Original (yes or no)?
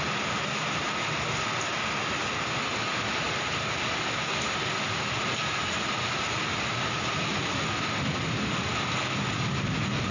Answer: yes